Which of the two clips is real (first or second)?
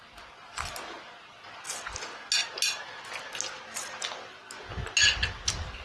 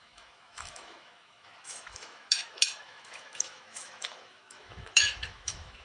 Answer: first